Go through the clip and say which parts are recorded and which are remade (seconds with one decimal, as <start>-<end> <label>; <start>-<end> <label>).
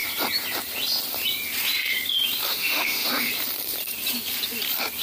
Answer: 0.0-2.5 recorded; 2.5-3.3 remade; 3.3-5.0 recorded